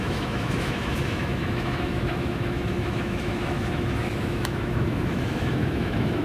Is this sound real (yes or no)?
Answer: no